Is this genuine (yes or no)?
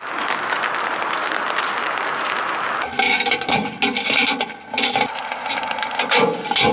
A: yes